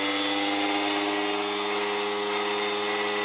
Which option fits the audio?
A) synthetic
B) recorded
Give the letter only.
B